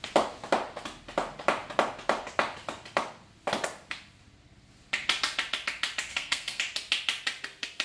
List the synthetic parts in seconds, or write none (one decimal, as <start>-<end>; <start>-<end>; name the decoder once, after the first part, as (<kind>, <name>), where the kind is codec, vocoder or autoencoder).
6.1-6.6 (codec, SNAC)